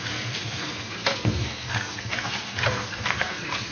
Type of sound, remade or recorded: remade